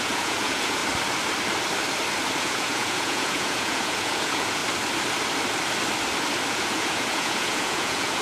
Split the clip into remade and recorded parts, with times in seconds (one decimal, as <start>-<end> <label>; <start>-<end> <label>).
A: 0.0-0.8 remade; 0.8-2.4 recorded; 2.4-4.6 remade; 4.6-6.5 recorded; 6.5-8.2 remade